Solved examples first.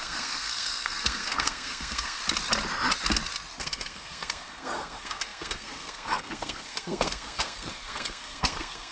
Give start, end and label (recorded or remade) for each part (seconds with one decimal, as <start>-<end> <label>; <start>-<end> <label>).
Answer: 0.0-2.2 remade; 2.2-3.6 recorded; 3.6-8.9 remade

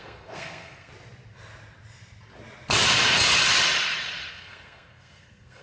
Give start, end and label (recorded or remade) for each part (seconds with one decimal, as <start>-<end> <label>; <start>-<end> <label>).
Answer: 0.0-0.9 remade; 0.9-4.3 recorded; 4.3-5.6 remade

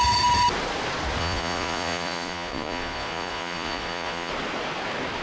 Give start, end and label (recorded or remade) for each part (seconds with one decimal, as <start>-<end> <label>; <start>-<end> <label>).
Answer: 0.0-1.2 recorded; 1.2-4.3 remade; 4.3-5.2 recorded

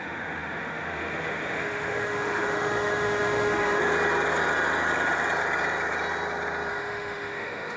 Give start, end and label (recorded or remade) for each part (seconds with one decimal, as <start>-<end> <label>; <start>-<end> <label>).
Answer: 0.0-3.8 remade; 3.8-6.7 recorded; 6.7-7.8 remade

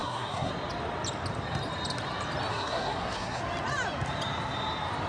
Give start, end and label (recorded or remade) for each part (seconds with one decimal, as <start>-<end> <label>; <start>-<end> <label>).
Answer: 0.0-0.5 remade; 0.5-2.5 recorded; 2.5-3.4 remade; 3.4-5.1 recorded